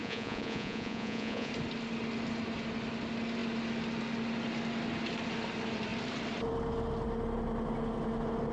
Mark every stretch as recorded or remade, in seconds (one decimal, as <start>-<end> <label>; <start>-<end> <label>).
0.0-1.5 remade; 1.5-8.5 recorded